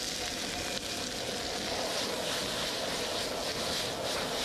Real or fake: real